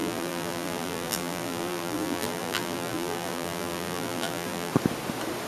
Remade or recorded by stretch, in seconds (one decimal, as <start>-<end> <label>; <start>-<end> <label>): 0.0-4.7 remade; 4.7-5.5 recorded